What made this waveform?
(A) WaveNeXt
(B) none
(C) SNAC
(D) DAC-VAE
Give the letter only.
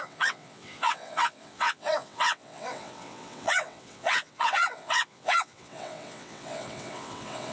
A